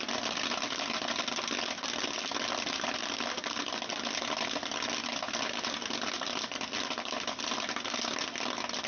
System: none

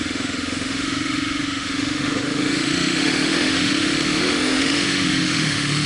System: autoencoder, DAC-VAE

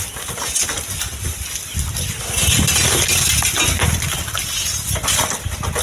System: none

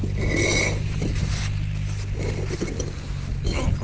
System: none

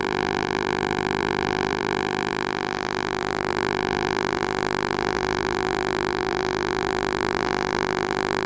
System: vocoder, BigVGAN v2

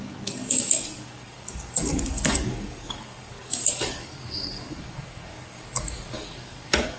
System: codec, DAC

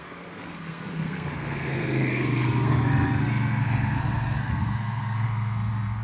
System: codec, SNAC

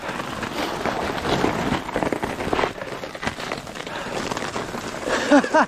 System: none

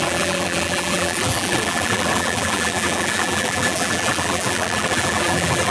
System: vocoder, BigVGAN v2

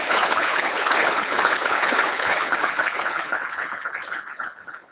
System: codec, HILCodec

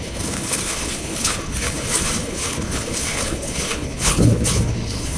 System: codec, HILCodec